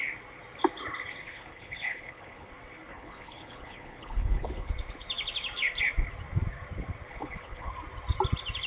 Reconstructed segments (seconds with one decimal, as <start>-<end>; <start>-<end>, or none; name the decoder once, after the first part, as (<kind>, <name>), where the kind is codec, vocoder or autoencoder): 1.2-2.5 (codec, HILCodec); 2.9-4.7; 7.1-7.7